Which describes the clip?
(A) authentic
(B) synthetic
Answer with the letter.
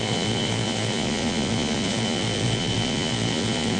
B